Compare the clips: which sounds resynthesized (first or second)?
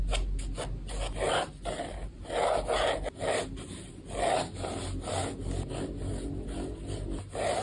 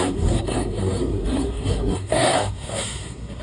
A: second